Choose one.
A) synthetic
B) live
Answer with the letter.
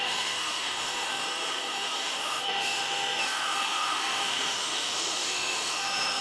A